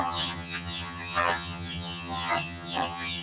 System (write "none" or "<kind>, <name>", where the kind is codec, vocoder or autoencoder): vocoder, HiFi-GAN